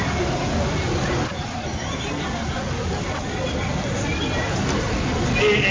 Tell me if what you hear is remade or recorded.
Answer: recorded